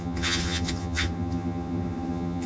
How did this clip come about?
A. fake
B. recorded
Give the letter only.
A